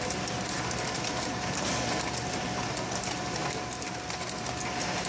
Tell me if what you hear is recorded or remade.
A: recorded